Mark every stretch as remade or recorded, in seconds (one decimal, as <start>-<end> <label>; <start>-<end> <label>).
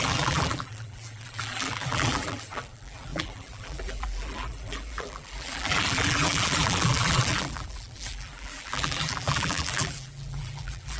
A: 0.0-11.0 remade